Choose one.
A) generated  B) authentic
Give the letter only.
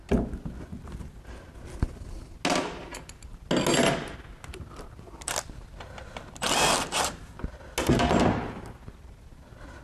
B